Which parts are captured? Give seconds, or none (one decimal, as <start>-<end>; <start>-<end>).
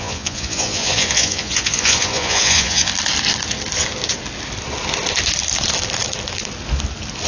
2.9-7.3